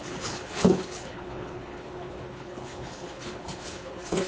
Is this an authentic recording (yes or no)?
no